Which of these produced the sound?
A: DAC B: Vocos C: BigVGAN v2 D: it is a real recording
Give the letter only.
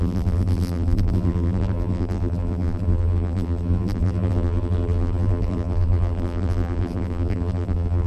C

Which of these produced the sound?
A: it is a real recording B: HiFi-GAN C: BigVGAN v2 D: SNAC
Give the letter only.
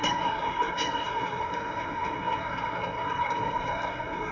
D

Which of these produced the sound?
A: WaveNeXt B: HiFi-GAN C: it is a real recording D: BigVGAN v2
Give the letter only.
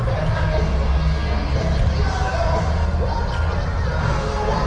C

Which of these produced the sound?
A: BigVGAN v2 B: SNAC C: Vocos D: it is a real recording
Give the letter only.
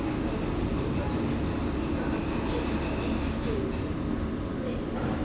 D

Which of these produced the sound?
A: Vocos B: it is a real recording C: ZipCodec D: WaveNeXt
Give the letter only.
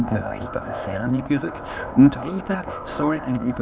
C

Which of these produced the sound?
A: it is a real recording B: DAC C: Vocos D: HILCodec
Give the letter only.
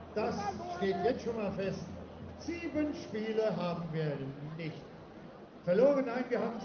A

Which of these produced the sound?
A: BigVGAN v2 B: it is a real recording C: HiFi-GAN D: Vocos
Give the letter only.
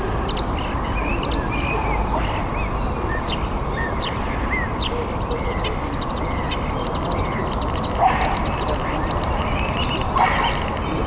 B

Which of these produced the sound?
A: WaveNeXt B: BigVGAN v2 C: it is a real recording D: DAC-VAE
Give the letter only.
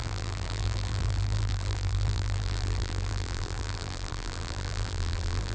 B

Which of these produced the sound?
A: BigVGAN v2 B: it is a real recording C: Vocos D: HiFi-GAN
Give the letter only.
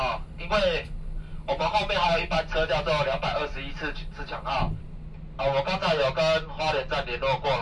B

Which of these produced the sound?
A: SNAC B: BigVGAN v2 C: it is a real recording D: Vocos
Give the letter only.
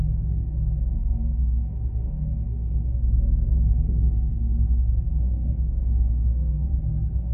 A